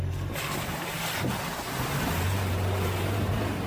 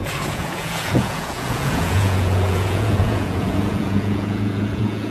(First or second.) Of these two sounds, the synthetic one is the second